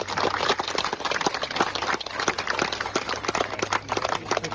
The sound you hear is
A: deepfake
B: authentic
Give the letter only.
B